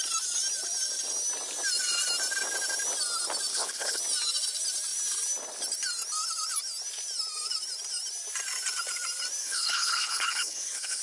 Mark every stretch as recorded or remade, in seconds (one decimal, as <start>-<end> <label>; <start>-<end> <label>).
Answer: 0.0-3.5 recorded; 3.5-4.0 remade; 4.0-9.4 recorded; 9.4-11.0 remade